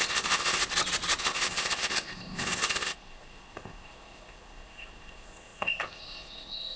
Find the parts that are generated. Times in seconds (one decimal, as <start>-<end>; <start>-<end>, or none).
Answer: 0.0-0.6; 1.2-6.8